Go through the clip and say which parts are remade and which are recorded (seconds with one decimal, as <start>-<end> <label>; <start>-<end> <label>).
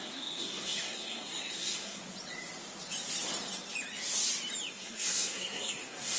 0.0-2.0 remade; 2.0-4.7 recorded; 4.7-6.2 remade